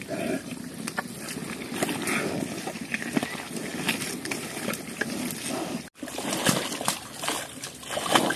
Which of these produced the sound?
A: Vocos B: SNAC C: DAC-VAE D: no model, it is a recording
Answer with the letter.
D